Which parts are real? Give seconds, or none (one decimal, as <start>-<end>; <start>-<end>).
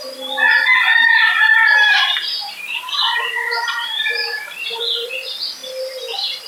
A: 0.0-0.9; 4.8-6.5